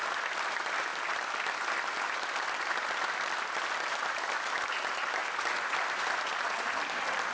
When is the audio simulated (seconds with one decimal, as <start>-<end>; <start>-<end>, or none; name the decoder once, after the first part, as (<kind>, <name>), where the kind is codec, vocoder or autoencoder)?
none